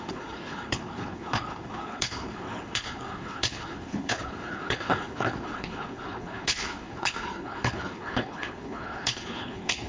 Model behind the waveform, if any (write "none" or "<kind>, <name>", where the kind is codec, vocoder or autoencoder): codec, HILCodec